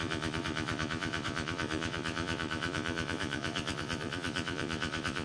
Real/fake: fake